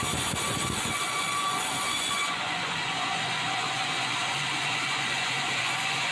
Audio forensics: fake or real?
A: fake